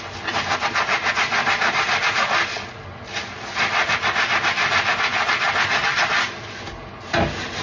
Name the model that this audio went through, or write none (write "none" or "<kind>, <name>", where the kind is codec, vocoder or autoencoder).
none